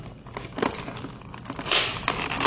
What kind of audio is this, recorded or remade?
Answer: recorded